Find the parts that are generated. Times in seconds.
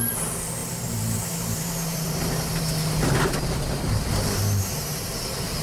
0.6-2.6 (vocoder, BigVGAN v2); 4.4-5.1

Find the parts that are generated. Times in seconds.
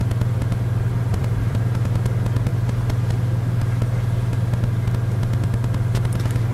1.1-1.6 (vocoder, BigVGAN v2)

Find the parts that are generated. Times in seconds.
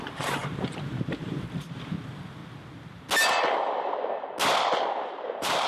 0.0-2.4 (vocoder, BigVGAN v2); 5.1-5.7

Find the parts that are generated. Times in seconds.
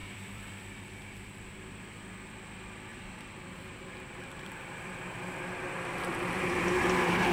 0.0-1.7 (vocoder, BigVGAN v2); 2.9-7.3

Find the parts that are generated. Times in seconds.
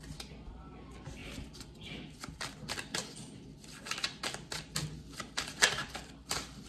1.2-2.4 (vocoder, BigVGAN v2); 5.8-6.7